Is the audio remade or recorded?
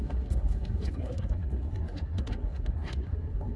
remade